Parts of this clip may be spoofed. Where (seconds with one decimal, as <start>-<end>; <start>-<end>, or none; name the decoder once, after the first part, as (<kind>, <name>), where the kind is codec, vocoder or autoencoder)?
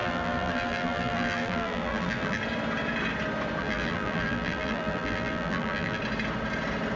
0.0-2.4 (vocoder, BigVGAN v2); 3.6-6.0